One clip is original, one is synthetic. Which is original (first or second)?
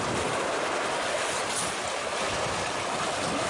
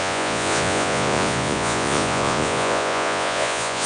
first